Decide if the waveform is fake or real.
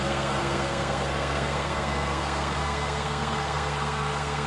fake